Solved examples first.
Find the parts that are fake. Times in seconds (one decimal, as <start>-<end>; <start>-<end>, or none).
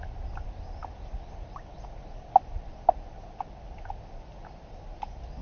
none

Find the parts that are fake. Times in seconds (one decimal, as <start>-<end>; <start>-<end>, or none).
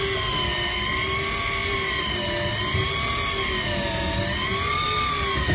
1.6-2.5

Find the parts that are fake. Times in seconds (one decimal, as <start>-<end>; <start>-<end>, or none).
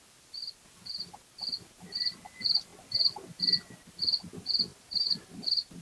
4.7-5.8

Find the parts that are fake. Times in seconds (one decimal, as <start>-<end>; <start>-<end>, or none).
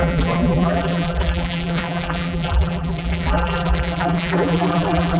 0.0-5.2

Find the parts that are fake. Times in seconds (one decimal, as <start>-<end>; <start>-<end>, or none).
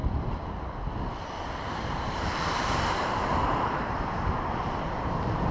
1.7-4.6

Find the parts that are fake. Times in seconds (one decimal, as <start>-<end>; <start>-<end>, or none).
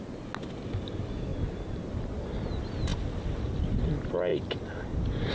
2.9-3.6; 4.3-5.3